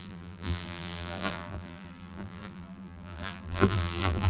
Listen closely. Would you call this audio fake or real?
fake